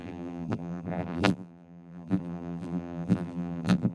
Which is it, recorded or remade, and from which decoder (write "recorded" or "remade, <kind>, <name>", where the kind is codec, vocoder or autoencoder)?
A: remade, vocoder, BigVGAN v2